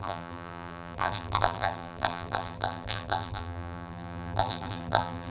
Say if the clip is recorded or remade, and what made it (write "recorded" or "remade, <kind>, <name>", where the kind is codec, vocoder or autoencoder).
remade, vocoder, BigVGAN v2